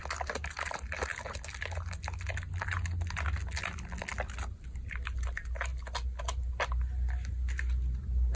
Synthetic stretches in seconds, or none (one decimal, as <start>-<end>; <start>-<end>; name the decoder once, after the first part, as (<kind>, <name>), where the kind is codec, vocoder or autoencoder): none